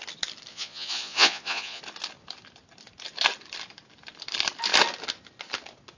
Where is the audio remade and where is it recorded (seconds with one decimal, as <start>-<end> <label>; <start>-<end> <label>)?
0.0-0.5 recorded; 0.5-1.8 remade; 1.8-6.0 recorded